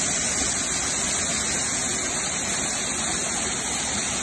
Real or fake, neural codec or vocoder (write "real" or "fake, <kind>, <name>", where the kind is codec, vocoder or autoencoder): real